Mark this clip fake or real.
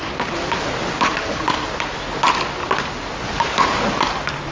real